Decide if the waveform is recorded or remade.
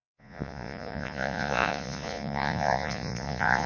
remade